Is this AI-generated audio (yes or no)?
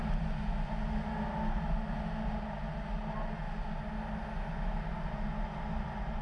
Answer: no